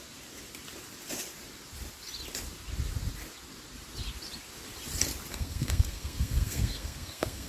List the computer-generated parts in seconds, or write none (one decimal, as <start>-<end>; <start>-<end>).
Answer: 5.3-7.5